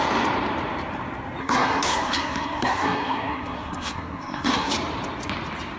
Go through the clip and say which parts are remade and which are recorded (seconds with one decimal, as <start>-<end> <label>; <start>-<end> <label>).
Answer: 0.0-1.4 recorded; 1.4-4.7 remade; 4.7-5.8 recorded